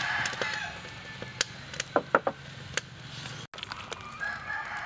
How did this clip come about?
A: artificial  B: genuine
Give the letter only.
B